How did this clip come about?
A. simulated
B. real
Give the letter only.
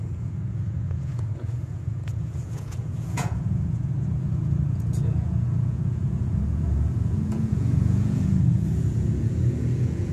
A